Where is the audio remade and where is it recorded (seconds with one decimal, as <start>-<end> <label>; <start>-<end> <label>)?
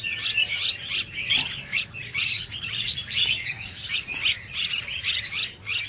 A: 0.0-1.7 recorded; 1.7-5.2 remade; 5.2-5.9 recorded